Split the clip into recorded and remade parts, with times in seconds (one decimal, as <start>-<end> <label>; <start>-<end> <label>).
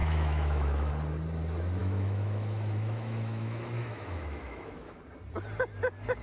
0.0-0.9 remade; 0.9-1.8 recorded; 1.8-5.0 remade; 5.0-6.2 recorded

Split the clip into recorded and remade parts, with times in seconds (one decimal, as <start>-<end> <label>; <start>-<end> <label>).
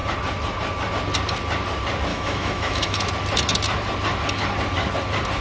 0.0-2.1 recorded; 2.1-3.1 remade; 3.1-5.4 recorded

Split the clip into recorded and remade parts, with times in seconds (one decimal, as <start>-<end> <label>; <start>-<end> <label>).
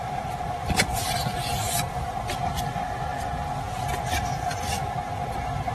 0.0-5.7 recorded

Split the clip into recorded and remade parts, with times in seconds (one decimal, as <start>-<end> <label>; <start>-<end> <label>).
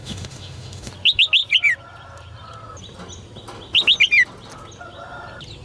0.0-0.9 remade; 0.9-5.6 recorded